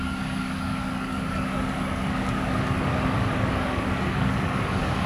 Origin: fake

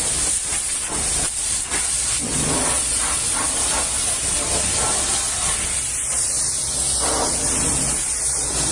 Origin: real